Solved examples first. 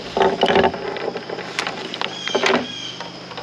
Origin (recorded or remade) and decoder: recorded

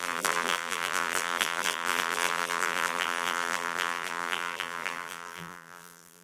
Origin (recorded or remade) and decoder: remade, vocoder, BigVGAN v2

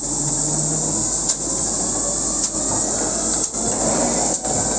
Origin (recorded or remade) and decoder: recorded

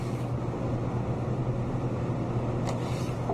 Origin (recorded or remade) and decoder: recorded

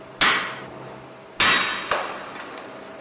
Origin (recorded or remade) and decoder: recorded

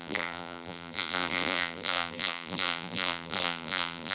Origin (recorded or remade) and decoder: remade, vocoder, BigVGAN v2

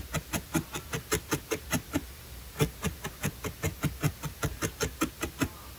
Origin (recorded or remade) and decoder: recorded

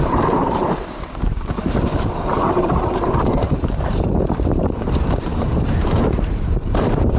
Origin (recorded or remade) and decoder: remade, vocoder, BigVGAN v2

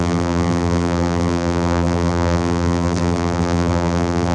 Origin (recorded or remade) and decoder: remade, vocoder, BigVGAN v2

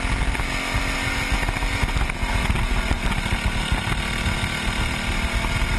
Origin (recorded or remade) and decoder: recorded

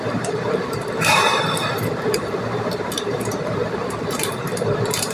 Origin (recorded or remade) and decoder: remade, vocoder, BigVGAN v2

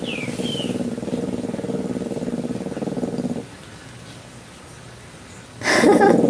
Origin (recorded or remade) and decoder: recorded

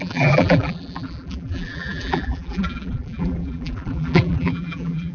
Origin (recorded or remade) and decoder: remade, vocoder, BigVGAN v2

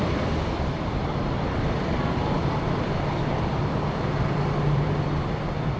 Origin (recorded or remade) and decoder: remade, vocoder, BigVGAN v2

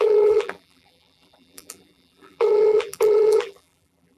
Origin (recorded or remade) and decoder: remade, vocoder, BigVGAN v2